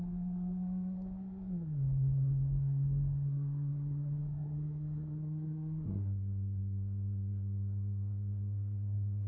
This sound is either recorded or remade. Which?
remade